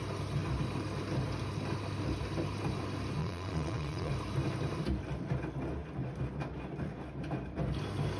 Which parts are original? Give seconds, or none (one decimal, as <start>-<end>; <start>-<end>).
0.0-3.2; 4.1-8.2